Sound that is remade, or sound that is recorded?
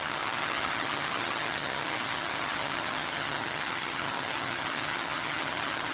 remade